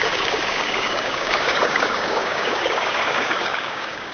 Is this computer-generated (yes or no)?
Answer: yes